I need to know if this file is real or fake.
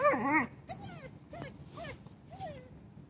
real